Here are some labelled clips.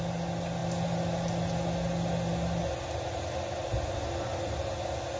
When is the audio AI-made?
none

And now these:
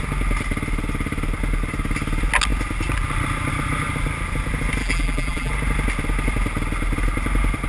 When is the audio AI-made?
4.8-5.5 (vocoder, BigVGAN v2)